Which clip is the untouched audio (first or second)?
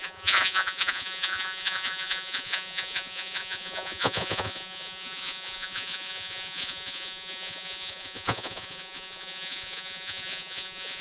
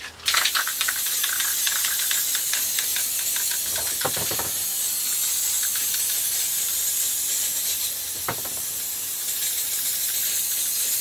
second